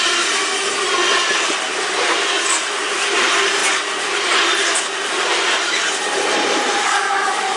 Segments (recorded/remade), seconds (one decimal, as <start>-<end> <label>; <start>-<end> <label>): 0.0-6.8 recorded; 6.8-7.6 remade